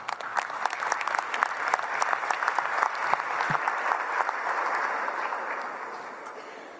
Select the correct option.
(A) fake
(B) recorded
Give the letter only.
B